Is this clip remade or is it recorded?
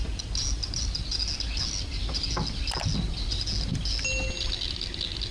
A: recorded